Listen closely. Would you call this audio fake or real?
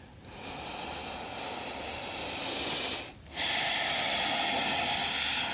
real